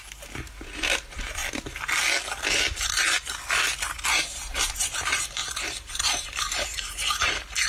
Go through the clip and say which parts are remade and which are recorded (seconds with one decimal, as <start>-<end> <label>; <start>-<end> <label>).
0.0-1.4 remade; 1.4-3.8 recorded; 3.8-5.4 remade; 5.4-5.9 recorded; 5.9-7.7 remade